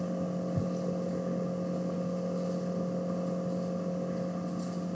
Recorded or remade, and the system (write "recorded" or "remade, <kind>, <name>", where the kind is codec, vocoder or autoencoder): recorded